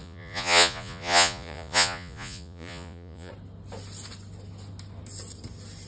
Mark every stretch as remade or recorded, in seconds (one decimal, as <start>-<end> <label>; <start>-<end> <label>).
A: 0.0-3.3 remade; 3.3-5.9 recorded